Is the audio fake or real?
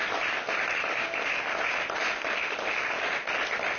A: real